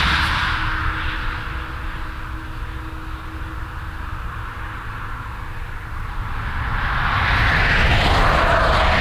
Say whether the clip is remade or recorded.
recorded